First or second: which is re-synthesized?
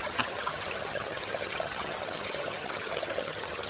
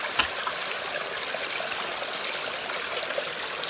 first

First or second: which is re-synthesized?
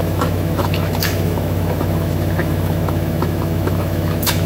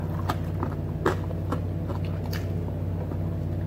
first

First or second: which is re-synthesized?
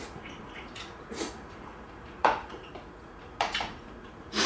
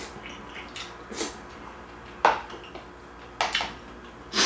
first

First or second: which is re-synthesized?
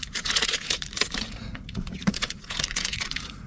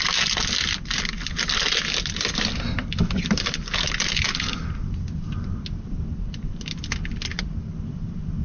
first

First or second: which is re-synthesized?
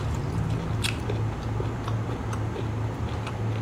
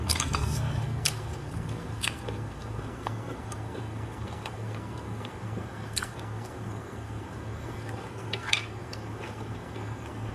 second